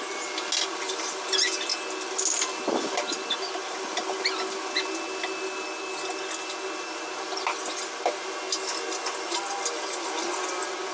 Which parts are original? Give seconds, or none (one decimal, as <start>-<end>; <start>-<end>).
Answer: 0.0-10.9